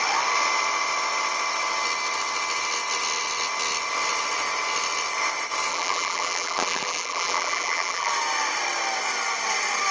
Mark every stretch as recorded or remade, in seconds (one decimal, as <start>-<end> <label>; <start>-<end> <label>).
0.0-5.7 recorded; 5.7-8.1 remade; 8.1-9.9 recorded